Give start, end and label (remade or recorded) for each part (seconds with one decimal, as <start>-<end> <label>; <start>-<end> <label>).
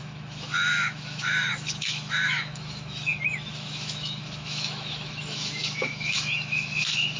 0.0-7.2 remade